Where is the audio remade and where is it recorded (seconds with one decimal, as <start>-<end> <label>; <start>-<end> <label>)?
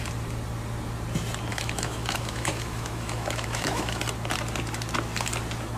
0.0-1.5 recorded; 1.5-4.0 remade; 4.0-5.8 recorded